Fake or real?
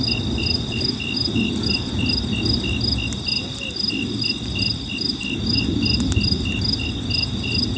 real